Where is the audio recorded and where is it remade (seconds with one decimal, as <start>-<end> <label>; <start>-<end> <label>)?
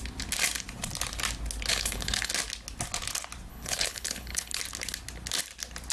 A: 0.0-1.7 recorded; 1.7-2.3 remade; 2.3-3.5 recorded; 3.5-4.6 remade; 4.6-5.9 recorded